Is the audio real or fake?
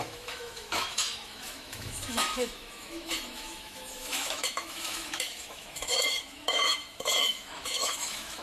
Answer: fake